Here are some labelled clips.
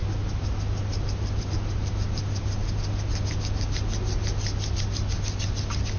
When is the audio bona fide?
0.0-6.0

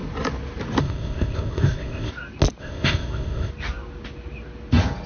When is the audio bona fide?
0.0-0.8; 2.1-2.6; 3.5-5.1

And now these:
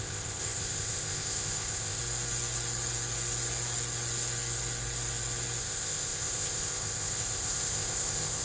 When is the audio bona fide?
2.0-5.6

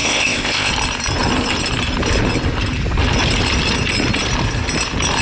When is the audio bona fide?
0.7-5.2

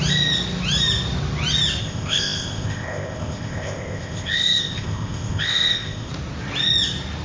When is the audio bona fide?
0.0-1.8; 6.1-7.2